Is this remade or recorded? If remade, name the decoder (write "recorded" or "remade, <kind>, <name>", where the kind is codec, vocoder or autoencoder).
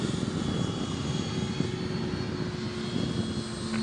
recorded